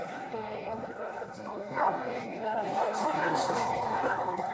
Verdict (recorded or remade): remade